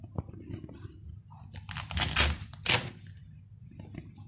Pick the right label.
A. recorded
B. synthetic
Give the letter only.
A